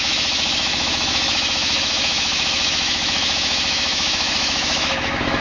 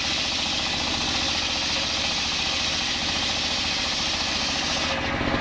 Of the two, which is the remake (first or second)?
first